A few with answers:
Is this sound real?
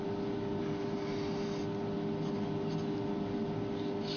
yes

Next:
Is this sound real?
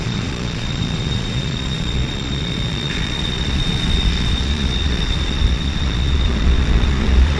no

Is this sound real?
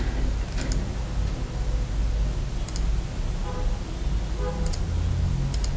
yes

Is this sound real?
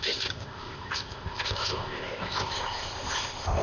no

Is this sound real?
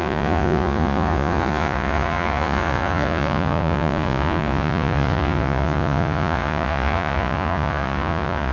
no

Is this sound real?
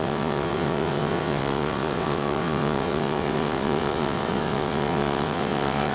no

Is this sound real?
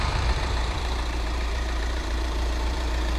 no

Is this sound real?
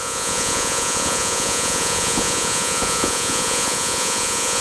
no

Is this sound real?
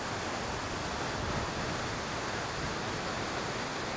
yes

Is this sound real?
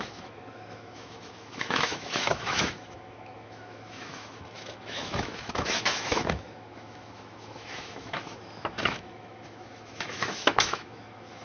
no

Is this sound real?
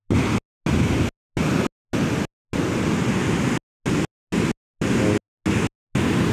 yes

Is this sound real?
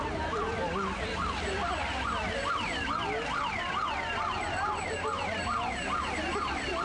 yes